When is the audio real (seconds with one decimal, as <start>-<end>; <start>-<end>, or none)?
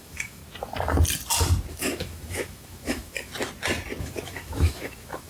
0.4-1.7; 3.3-4.0